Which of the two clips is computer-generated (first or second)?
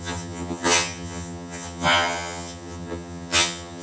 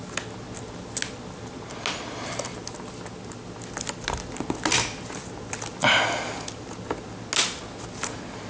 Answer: first